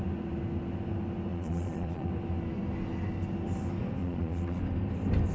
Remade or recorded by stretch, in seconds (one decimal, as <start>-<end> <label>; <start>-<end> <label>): 0.0-1.3 recorded; 1.3-2.1 remade; 2.1-4.0 recorded; 4.0-4.6 remade; 4.6-5.3 recorded